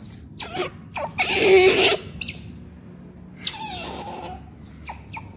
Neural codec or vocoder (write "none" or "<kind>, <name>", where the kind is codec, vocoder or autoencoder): none